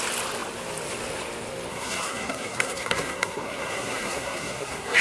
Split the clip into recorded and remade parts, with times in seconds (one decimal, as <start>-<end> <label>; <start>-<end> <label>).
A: 0.0-1.7 recorded; 1.7-5.0 remade